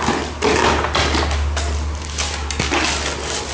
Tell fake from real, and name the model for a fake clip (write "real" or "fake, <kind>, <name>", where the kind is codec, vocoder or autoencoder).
real